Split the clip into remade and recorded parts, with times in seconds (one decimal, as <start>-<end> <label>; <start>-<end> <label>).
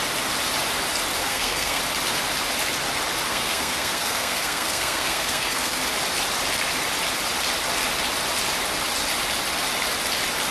0.0-1.2 recorded; 1.2-1.8 remade; 1.8-3.3 recorded; 3.3-5.8 remade; 5.8-10.5 recorded